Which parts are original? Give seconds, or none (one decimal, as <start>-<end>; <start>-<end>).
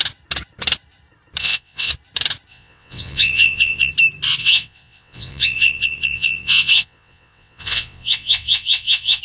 0.0-1.4; 1.9-2.5; 3.9-4.4